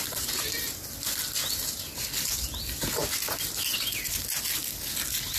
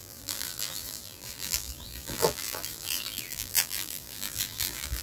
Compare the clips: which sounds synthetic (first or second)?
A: second